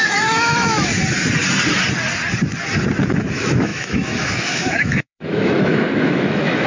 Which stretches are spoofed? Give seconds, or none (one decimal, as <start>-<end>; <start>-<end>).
0.0-0.9; 3.1-6.7